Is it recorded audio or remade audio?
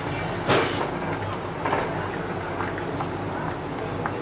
recorded